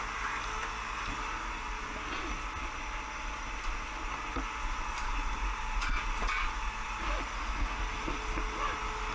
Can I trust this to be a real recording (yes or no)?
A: yes